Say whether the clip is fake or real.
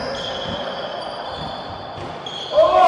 real